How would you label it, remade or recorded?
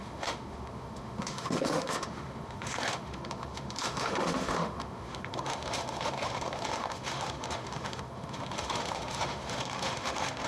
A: remade